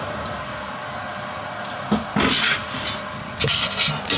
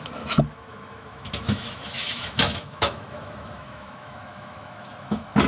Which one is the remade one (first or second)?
second